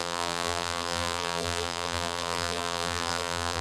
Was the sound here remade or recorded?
remade